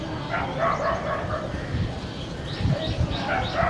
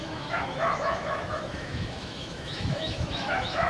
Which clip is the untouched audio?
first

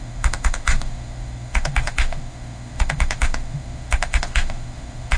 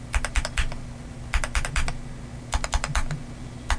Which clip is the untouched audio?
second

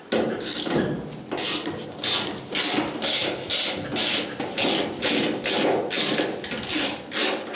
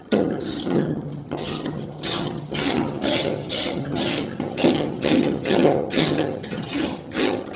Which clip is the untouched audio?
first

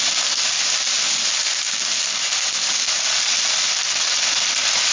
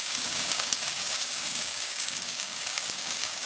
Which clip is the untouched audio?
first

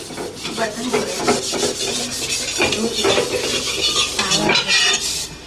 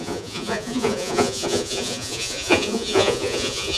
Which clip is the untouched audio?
first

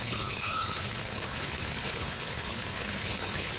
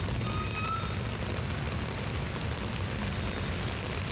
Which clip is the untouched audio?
second